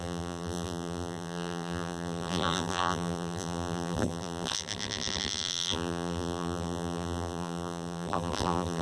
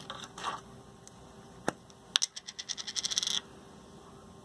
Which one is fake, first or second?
first